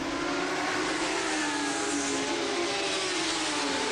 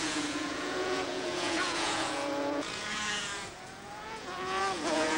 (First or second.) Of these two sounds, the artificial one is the second